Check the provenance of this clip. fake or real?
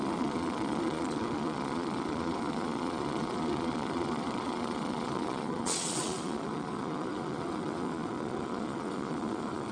fake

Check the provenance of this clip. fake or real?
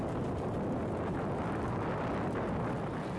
real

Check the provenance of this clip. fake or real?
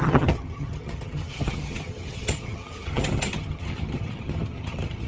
fake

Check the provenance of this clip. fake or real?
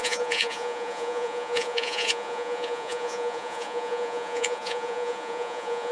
fake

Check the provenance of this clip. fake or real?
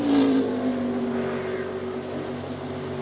real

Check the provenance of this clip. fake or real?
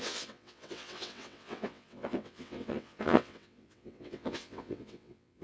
fake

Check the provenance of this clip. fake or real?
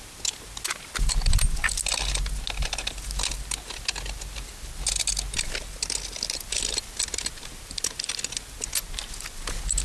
real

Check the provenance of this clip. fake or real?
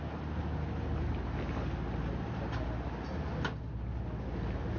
real